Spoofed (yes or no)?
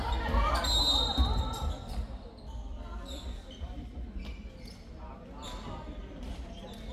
no